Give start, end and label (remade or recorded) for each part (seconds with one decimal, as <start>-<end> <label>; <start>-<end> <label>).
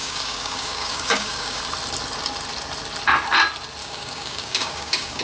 0.0-1.6 remade; 1.6-3.8 recorded; 3.8-5.2 remade